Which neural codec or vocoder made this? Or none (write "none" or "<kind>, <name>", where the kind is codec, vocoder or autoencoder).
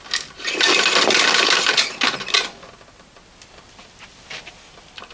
none